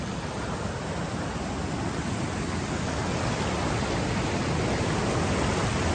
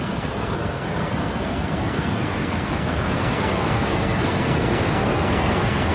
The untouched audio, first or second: first